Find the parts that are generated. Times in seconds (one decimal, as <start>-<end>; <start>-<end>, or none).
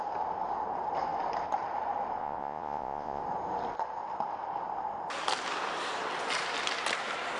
2.2-3.2